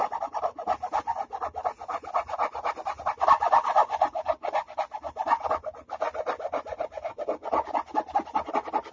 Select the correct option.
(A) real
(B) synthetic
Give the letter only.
A